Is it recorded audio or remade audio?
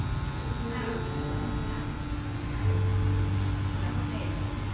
recorded